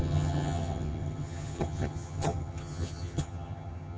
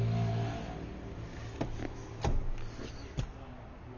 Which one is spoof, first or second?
first